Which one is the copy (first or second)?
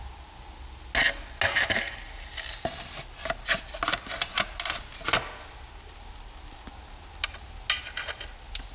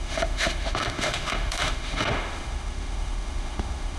second